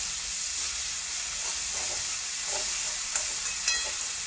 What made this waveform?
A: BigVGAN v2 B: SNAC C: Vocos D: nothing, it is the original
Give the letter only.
D